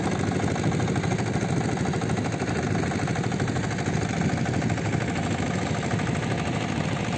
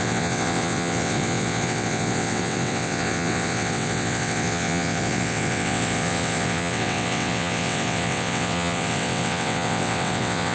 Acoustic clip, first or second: first